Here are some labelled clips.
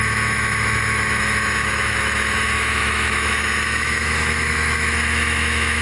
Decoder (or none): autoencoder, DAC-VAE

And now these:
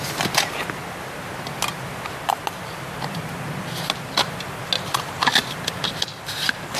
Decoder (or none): none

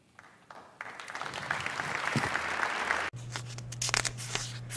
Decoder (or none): none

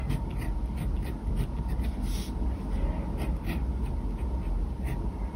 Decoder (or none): none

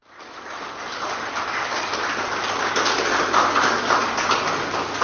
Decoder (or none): none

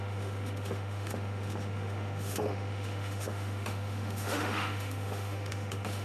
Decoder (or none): autoencoder, DAC-VAE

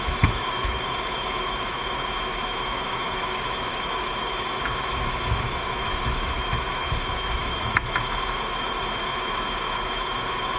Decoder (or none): autoencoder, DAC-VAE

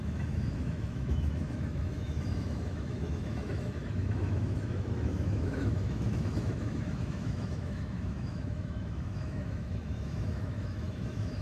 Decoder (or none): autoencoder, DAC-VAE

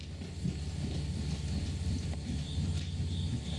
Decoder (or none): none